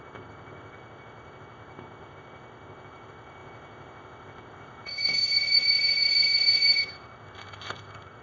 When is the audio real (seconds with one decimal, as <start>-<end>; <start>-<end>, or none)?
none